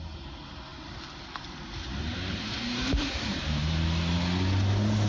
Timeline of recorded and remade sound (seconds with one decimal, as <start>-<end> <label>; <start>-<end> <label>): 0.0-0.7 recorded; 0.7-3.8 remade; 3.8-5.1 recorded